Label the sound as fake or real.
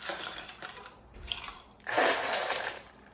fake